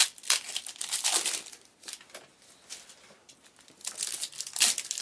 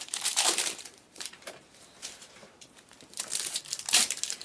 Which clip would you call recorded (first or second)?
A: first